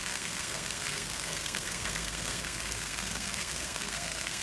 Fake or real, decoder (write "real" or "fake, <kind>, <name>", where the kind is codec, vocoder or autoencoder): fake, codec, SNAC